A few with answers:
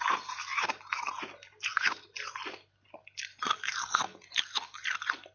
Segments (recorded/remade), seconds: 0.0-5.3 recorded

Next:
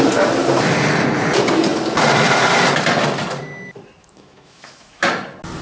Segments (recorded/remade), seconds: 0.0-4.0 recorded; 4.0-5.1 remade; 5.1-5.6 recorded